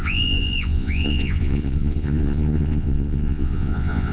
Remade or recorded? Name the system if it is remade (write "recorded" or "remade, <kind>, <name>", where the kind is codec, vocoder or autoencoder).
remade, vocoder, Vocos